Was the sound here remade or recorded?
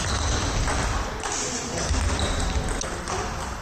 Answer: recorded